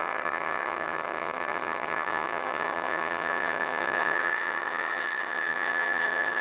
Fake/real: fake